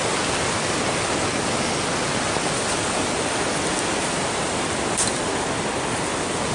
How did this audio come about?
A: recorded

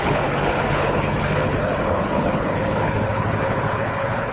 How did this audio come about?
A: remade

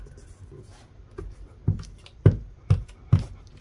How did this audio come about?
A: recorded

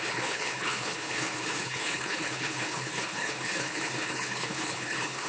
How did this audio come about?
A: remade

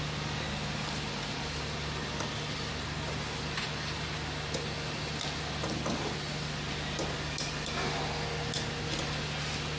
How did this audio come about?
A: recorded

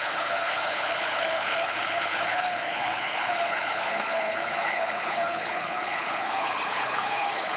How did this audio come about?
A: remade